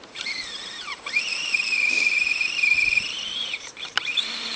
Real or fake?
fake